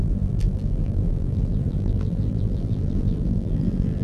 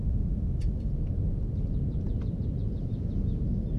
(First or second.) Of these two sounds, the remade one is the first